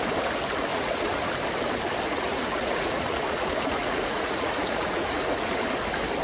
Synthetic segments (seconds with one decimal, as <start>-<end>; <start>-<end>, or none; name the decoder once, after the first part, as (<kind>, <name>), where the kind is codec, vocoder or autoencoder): 0.7-1.3 (vocoder, Vocos); 2.1-5.5